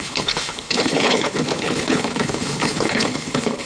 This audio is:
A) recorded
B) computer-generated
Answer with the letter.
B